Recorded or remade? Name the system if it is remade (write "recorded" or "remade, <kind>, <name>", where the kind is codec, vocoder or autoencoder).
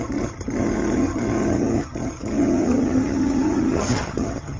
remade, vocoder, HiFi-GAN